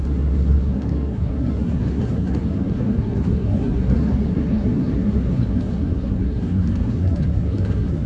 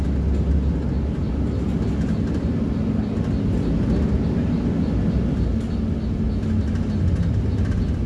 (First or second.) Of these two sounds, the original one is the second